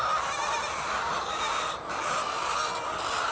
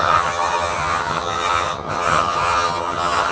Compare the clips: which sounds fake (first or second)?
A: second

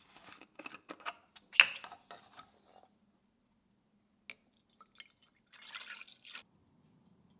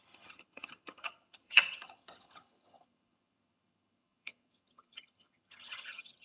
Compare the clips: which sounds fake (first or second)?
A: second